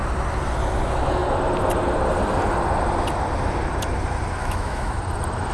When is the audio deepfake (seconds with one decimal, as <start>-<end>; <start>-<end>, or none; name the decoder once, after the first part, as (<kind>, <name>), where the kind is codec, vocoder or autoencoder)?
4.4-5.0 (autoencoder, DAC-VAE)